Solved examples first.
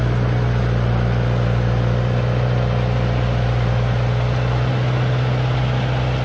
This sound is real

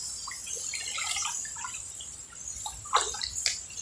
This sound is real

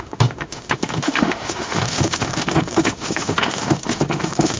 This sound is fake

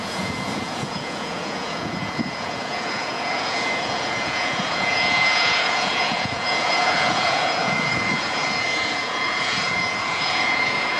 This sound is fake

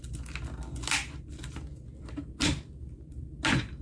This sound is real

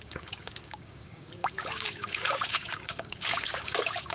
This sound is fake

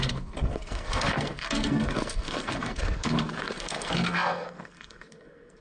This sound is fake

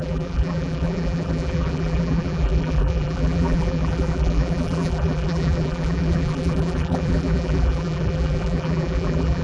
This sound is fake